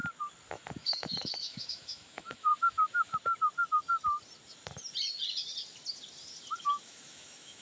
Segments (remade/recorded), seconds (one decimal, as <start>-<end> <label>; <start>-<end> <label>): 0.0-0.5 recorded; 0.5-2.5 remade; 2.5-6.6 recorded; 6.6-7.6 remade